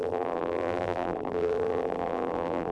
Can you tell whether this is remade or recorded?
remade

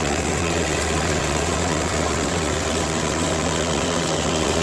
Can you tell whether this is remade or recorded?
remade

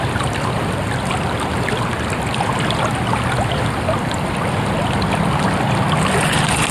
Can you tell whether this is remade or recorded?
recorded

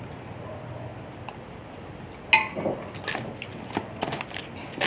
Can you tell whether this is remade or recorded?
recorded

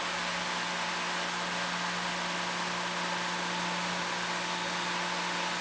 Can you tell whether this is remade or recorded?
recorded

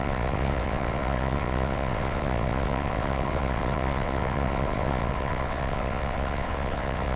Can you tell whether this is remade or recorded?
remade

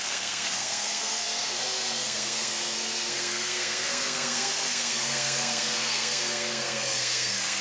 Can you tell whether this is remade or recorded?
remade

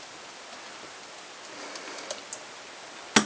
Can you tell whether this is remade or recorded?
recorded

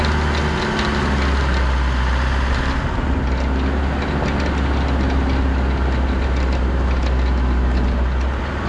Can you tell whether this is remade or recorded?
recorded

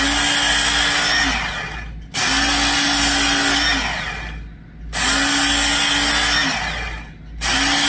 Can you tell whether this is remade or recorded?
recorded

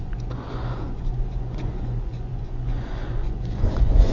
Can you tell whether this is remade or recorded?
remade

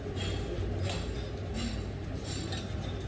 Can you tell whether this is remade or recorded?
recorded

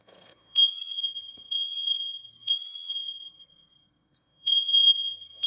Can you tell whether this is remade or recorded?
remade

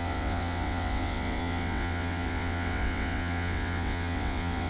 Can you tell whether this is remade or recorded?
remade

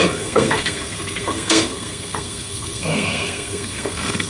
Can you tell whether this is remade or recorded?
remade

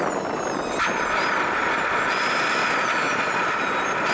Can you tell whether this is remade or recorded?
recorded